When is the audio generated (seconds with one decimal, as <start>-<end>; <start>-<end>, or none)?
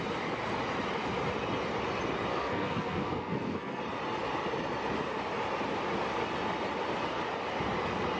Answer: 2.3-3.8